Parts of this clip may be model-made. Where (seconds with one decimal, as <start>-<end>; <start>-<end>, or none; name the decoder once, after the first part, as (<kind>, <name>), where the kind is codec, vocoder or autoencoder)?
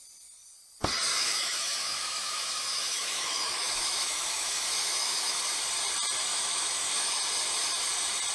1.1-5.4 (autoencoder, DAC-VAE); 6.3-7.2